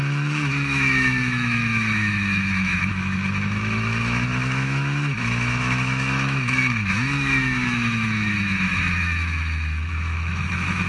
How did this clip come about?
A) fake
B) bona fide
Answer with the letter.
A